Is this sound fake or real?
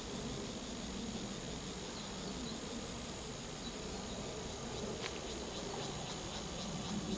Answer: real